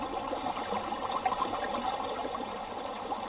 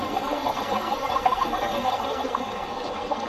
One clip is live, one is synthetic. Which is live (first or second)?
first